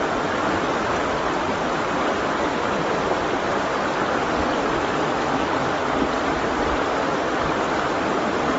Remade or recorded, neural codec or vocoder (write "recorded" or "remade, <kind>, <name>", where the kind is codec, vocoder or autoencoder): recorded